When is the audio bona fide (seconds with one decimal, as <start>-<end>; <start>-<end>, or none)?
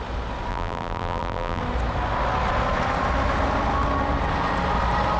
0.0-0.5; 1.6-5.2